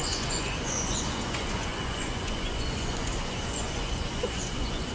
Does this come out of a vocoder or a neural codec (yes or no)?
yes